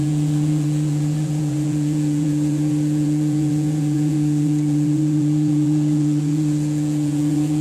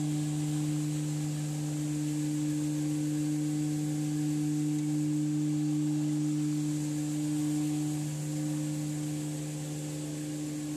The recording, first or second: second